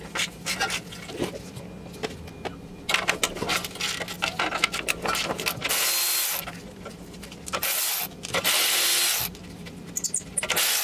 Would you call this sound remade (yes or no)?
no